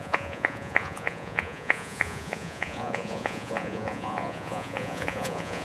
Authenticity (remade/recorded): remade